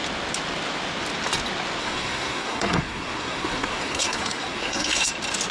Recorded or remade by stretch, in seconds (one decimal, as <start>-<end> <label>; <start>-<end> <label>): 0.0-1.8 recorded; 1.8-5.1 remade; 5.1-5.5 recorded